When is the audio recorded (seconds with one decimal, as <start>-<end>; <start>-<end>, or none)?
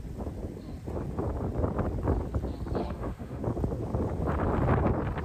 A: 0.0-2.8; 3.4-5.2